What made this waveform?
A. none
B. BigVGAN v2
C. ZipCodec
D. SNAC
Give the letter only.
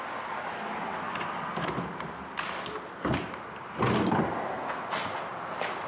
A